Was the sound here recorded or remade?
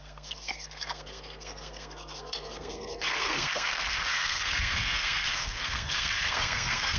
remade